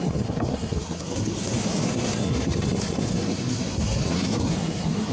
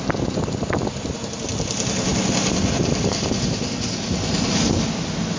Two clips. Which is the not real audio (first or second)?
first